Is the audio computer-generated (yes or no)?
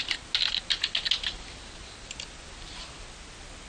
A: no